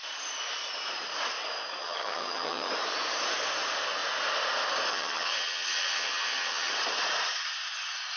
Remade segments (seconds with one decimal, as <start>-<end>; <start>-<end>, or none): 1.8-2.7; 4.9-6.7